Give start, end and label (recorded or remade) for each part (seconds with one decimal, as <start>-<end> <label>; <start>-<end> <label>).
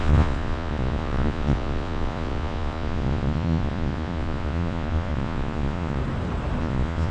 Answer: 0.0-6.0 remade; 6.0-6.6 recorded; 6.6-7.1 remade